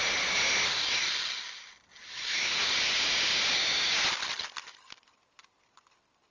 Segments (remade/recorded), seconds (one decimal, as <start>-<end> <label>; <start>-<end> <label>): 0.0-2.0 recorded; 2.0-2.6 remade; 2.6-6.3 recorded